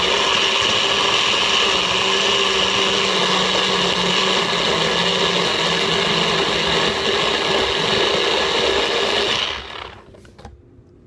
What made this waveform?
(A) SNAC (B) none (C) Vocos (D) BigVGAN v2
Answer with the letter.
B